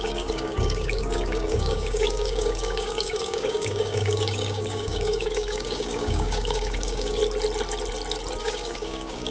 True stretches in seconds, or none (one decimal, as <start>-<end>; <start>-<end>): 7.2-8.4